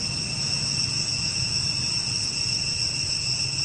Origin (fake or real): real